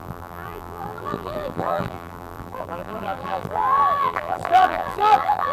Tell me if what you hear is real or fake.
fake